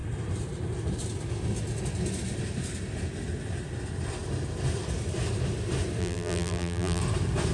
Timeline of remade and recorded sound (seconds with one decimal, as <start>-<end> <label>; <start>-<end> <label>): 0.0-6.0 recorded; 6.0-7.0 remade; 7.0-7.5 recorded